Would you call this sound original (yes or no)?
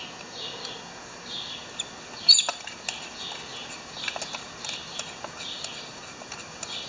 yes